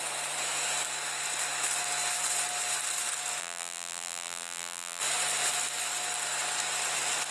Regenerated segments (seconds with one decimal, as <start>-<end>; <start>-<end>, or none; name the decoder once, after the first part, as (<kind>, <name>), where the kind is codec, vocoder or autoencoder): 3.4-5.0 (vocoder, BigVGAN v2)

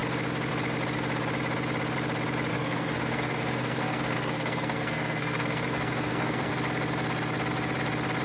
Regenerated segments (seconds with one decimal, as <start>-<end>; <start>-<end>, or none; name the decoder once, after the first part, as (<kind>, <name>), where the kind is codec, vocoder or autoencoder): 2.5-6.5 (codec, SNAC)